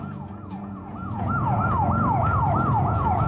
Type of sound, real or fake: fake